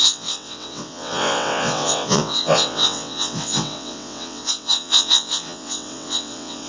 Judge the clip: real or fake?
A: fake